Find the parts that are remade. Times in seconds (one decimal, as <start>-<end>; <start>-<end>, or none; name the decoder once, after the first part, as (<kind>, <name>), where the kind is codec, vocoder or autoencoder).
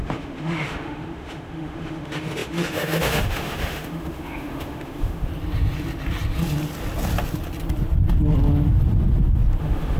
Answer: 0.0-5.3 (autoencoder, DAC-VAE); 9.6-10.0